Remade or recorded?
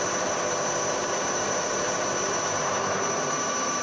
remade